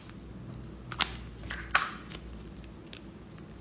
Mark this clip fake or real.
real